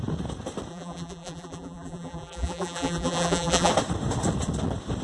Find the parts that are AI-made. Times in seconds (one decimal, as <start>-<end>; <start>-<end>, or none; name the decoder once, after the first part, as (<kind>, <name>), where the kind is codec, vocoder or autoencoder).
0.7-3.7 (vocoder, BigVGAN v2)